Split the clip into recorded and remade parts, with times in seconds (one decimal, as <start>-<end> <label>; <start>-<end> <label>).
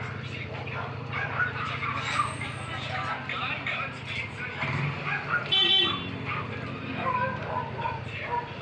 0.0-8.6 remade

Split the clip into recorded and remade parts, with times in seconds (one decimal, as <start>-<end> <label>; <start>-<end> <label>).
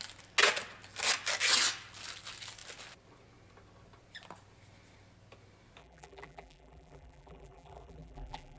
0.0-5.8 recorded; 5.8-8.6 remade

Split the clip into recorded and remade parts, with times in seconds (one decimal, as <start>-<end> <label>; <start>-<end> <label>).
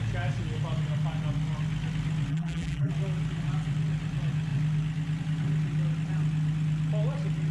0.0-2.3 recorded; 2.3-2.9 remade; 2.9-7.5 recorded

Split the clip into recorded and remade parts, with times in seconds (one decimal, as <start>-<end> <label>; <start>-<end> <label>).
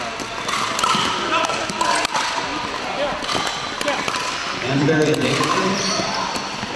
0.0-4.4 recorded; 4.4-6.8 remade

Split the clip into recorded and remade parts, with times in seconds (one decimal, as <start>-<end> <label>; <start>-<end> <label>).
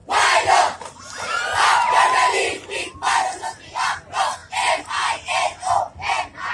0.0-2.9 remade; 2.9-6.5 recorded